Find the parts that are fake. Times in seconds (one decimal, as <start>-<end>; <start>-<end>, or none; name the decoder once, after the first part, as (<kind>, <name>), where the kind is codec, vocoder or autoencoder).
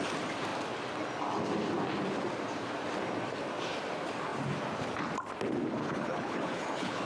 5.8-7.0 (codec, HILCodec)